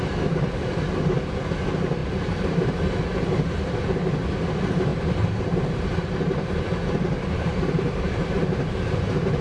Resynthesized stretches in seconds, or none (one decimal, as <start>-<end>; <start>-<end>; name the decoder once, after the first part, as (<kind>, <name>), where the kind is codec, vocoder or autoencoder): 2.0-2.8 (vocoder, BigVGAN v2); 4.9-9.4